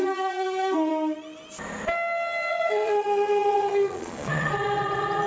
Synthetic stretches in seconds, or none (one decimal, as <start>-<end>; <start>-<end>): 0.0-0.9; 2.5-5.3